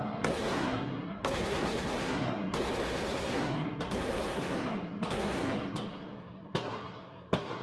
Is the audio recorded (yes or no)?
no